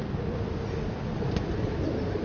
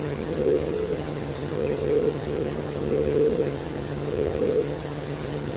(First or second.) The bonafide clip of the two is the first